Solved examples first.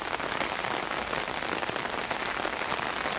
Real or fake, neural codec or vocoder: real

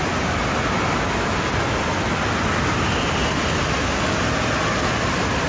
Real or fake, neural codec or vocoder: real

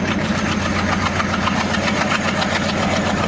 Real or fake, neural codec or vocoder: real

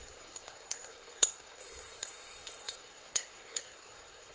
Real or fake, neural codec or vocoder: fake, codec, SNAC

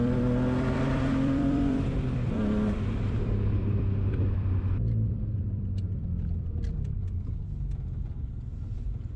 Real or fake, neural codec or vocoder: fake, vocoder, BigVGAN v2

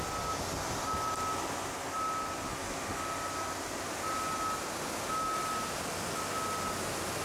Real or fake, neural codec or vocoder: real